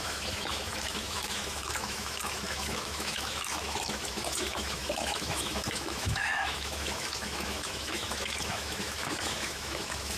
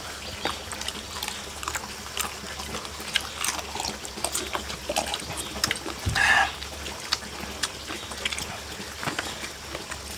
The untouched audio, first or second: second